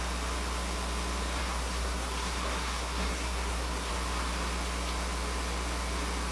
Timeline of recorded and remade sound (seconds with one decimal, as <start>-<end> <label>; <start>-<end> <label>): 0.0-1.4 recorded; 1.4-3.9 remade; 3.9-6.3 recorded